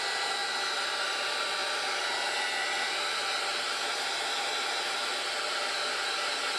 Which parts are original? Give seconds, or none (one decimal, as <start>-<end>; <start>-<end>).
0.0-6.6

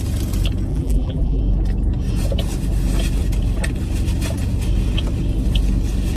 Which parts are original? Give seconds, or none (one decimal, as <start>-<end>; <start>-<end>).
0.0-0.7; 1.4-6.2

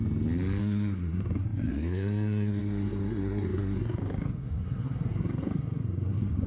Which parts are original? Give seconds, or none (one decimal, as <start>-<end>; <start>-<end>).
0.0-0.6

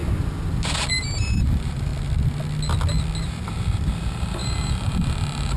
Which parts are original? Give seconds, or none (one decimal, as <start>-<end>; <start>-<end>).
0.0-0.9; 1.9-3.2

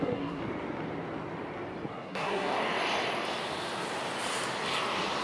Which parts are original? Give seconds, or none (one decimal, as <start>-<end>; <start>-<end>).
0.4-1.9; 2.5-5.2